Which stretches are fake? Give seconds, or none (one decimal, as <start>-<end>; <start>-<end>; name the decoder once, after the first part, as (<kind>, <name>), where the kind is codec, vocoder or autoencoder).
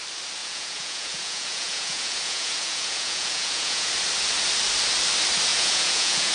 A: 0.4-3.9 (vocoder, Vocos); 5.5-6.3